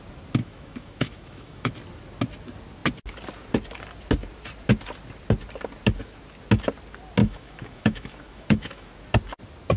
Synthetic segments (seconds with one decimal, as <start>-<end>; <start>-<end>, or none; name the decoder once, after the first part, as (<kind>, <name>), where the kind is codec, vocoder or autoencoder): 0.4-1.7 (autoencoder, DAC-VAE); 7.2-8.9